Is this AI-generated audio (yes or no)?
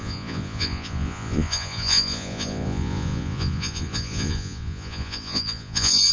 yes